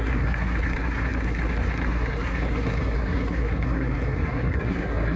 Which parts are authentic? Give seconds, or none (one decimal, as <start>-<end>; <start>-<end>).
none